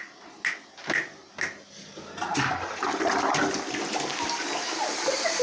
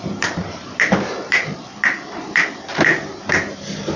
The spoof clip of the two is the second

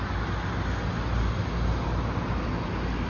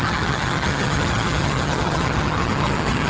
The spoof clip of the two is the second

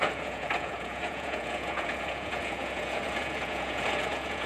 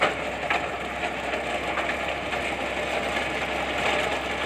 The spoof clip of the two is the first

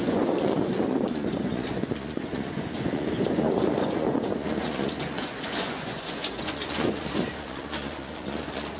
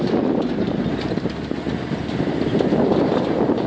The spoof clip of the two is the first